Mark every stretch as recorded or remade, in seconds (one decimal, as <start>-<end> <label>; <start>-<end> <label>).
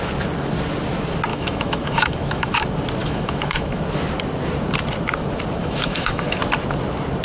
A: 0.0-1.3 recorded; 1.3-2.6 remade; 2.6-3.0 recorded; 3.0-3.8 remade; 3.8-5.6 recorded; 5.6-6.4 remade; 6.4-7.2 recorded